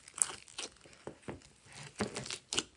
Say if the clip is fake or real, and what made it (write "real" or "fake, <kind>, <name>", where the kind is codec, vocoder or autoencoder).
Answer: real